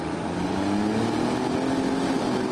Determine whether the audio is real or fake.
real